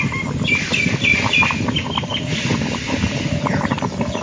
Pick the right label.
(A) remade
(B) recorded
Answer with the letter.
B